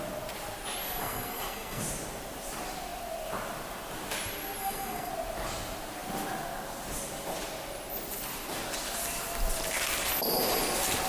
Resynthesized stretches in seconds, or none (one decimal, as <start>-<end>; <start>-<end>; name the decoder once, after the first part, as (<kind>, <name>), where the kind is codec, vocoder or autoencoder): 1.0-1.8 (codec, SNAC); 4.6-5.1